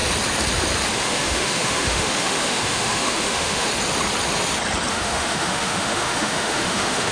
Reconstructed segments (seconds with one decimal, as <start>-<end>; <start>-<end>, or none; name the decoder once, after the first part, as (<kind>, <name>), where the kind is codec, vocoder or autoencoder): 0.9-3.7 (autoencoder, DAC-VAE); 4.9-7.1